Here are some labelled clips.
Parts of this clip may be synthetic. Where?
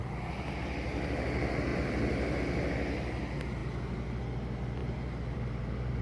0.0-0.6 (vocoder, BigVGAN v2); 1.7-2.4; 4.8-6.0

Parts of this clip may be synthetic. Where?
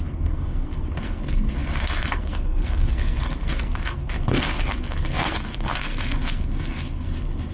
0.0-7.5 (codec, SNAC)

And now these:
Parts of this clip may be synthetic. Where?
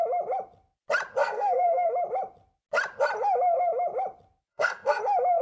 1.2-1.9 (codec, SNAC); 4.5-5.0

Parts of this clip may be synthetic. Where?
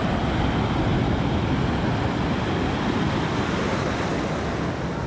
none